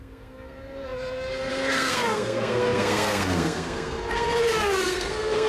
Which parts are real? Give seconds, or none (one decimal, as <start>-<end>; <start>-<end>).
none